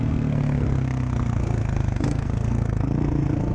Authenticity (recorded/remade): remade